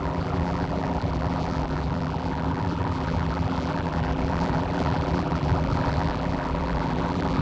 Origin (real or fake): fake